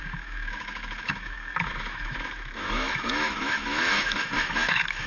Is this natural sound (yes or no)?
no